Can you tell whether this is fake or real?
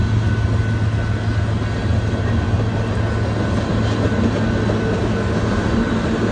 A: real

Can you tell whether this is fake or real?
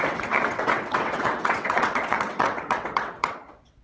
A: fake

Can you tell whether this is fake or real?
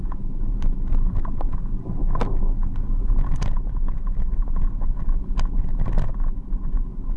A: real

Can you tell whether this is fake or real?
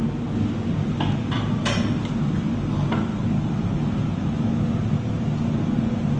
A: real